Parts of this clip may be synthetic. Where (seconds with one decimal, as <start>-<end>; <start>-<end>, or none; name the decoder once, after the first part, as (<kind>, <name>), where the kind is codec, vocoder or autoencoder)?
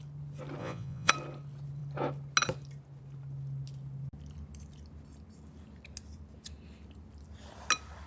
0.6-1.1 (vocoder, Vocos)